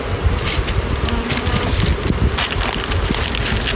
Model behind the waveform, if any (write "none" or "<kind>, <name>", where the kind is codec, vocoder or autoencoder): none